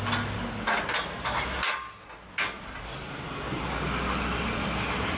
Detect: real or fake real